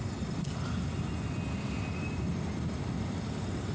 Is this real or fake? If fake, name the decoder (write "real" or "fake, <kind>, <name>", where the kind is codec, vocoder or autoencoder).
real